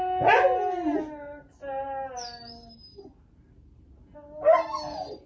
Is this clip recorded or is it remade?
recorded